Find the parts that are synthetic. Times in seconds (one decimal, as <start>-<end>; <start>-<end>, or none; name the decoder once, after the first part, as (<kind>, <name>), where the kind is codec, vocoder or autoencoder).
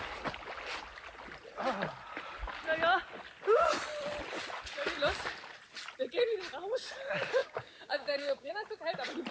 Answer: 7.4-8.5 (codec, DAC)